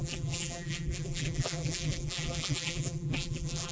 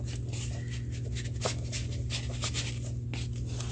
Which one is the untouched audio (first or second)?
second